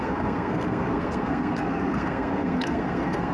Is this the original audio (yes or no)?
no